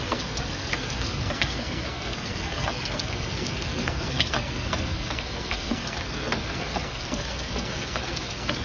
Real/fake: fake